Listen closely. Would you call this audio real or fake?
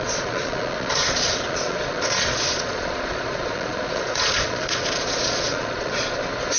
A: fake